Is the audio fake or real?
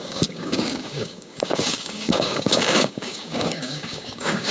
fake